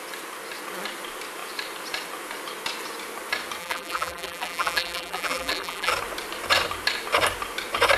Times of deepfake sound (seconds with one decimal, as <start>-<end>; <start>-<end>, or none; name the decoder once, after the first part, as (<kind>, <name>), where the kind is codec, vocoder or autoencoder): 3.6-5.9 (vocoder, BigVGAN v2)